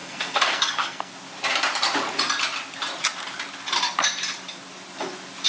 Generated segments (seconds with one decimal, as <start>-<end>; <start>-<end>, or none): 0.0-1.1